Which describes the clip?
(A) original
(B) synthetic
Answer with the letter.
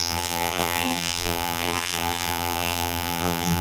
B